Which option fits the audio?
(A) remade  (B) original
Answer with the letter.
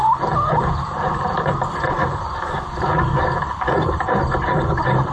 A